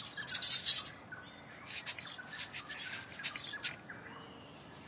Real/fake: real